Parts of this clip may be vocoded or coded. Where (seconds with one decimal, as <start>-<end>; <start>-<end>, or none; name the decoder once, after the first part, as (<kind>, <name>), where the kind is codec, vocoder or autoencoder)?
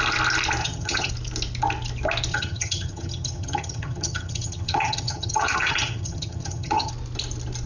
0.6-1.1 (vocoder, HiFi-GAN); 2.3-6.9